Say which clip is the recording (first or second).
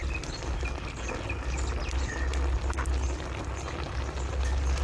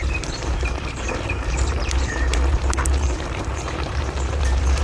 first